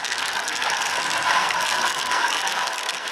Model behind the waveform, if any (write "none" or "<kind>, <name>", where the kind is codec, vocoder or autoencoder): codec, SNAC